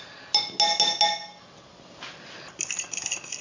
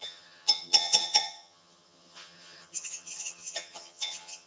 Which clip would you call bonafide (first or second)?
first